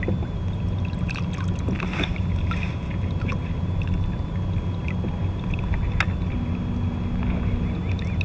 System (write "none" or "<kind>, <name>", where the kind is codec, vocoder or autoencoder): none